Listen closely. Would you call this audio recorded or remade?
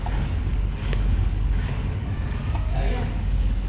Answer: remade